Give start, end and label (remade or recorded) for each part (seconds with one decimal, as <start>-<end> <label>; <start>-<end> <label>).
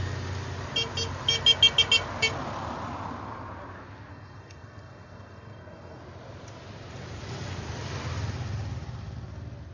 0.0-4.1 recorded; 4.1-6.0 remade; 6.0-9.7 recorded